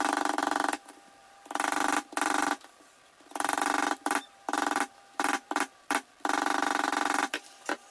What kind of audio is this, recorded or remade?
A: remade